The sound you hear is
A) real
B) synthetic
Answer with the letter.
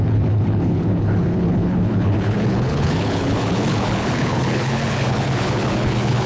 B